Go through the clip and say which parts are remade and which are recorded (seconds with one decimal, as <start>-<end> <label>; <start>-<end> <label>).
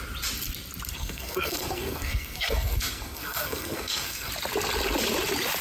0.0-0.9 recorded; 0.9-4.3 remade; 4.3-5.6 recorded